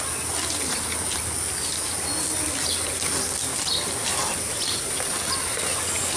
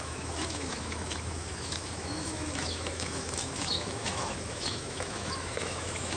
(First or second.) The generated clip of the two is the second